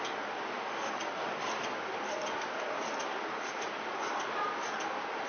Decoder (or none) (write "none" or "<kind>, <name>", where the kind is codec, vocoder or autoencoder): none